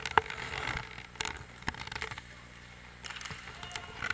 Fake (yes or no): no